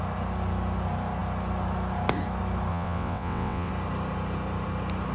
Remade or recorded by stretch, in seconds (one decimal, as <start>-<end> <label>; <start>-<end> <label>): 0.0-2.7 recorded; 2.7-3.7 remade; 3.7-5.1 recorded